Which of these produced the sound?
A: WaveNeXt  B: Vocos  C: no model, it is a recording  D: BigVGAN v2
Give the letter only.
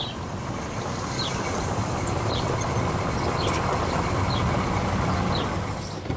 C